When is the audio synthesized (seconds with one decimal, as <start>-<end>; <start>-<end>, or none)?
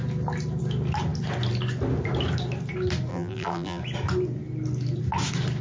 3.1-3.8